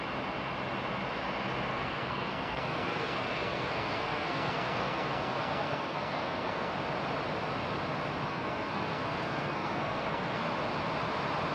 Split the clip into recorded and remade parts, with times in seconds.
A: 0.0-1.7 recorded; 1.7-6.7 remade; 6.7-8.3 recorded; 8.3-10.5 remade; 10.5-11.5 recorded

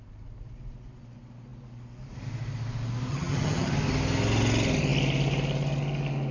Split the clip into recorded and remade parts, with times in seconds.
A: 0.0-3.1 recorded; 3.1-3.7 remade; 3.7-6.3 recorded

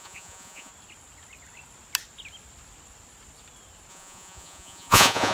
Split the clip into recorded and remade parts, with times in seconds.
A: 0.0-0.7 remade; 0.7-3.9 recorded; 3.9-5.3 remade